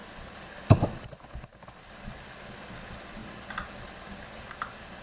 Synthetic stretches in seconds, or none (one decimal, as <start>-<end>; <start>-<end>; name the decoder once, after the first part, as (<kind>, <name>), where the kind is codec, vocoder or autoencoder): none